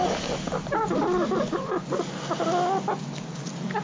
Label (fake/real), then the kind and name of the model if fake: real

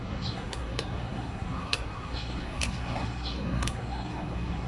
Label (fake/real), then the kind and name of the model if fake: fake, codec, SNAC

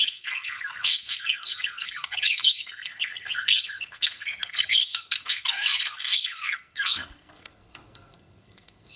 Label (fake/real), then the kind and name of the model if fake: fake, codec, SNAC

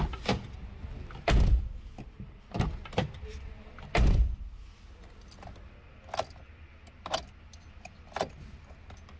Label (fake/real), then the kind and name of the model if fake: real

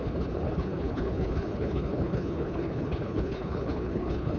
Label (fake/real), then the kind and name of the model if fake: fake, codec, HILCodec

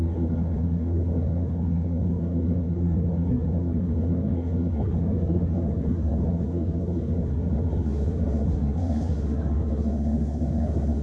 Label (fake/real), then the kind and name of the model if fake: fake, codec, SNAC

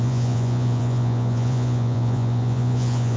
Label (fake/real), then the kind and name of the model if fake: fake, vocoder, Vocos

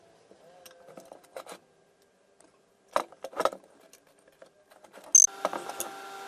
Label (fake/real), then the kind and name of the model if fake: real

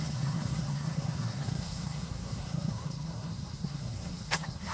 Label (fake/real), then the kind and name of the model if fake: fake, codec, SNAC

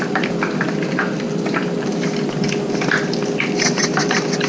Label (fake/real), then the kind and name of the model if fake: real